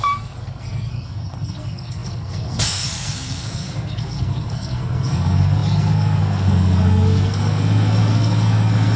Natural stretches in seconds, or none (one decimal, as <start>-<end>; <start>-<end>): none